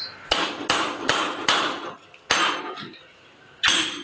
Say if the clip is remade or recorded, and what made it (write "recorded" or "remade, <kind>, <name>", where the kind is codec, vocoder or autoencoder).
recorded